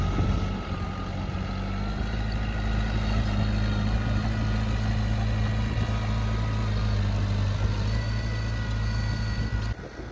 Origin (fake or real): real